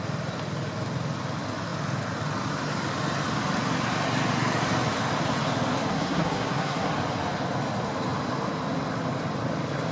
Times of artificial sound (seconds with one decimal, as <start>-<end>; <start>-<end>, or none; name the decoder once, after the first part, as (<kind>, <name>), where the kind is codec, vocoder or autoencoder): 5.9-6.9 (codec, SNAC)